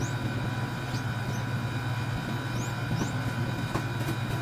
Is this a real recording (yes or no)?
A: yes